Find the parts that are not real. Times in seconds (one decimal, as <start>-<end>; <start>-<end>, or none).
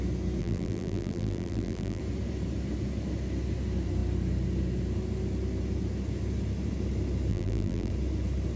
0.4-2.0; 7.3-7.9